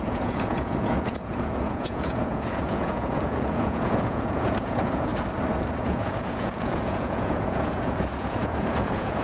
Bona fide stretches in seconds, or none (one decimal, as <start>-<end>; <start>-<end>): 5.1-5.8

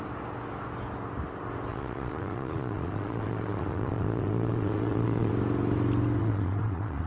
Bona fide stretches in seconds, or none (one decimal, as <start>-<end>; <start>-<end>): 0.0-1.7; 5.3-6.2

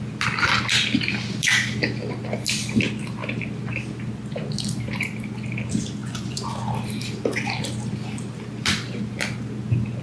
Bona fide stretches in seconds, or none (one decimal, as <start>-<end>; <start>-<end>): 0.0-6.0; 6.5-10.0

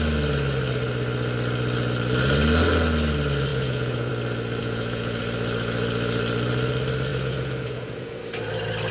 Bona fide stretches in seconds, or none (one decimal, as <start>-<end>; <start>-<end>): 0.0-3.5; 4.1-4.6; 5.2-7.1; 8.2-8.9